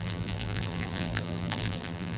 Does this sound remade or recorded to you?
remade